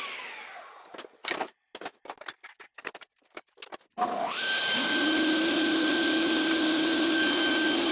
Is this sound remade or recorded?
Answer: recorded